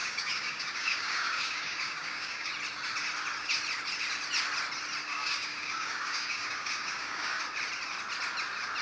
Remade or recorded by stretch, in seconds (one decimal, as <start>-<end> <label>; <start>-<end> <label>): 0.0-2.5 remade; 2.5-5.0 recorded; 5.0-7.4 remade; 7.4-8.8 recorded

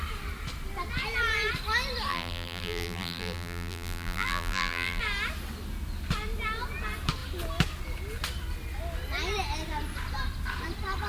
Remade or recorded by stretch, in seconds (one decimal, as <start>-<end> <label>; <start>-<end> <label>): 0.0-2.1 recorded; 2.1-5.0 remade; 5.0-11.1 recorded

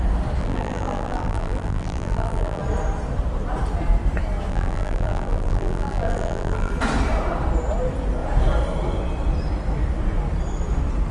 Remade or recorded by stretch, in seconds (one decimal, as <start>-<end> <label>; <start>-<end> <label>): 0.0-0.4 recorded; 0.4-2.6 remade; 2.6-4.5 recorded; 4.5-6.7 remade; 6.7-11.1 recorded

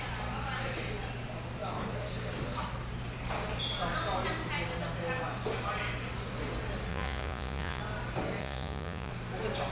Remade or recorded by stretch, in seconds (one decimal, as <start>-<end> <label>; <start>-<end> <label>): 0.0-6.9 recorded; 6.9-7.8 remade; 7.8-8.4 recorded; 8.4-9.1 remade; 9.1-9.7 recorded

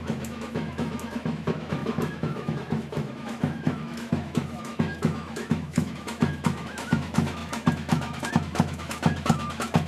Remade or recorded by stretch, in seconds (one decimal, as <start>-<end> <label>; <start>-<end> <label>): 0.0-9.9 remade